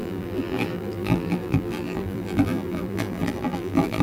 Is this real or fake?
fake